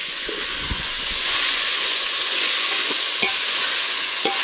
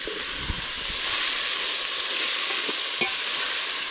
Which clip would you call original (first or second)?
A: second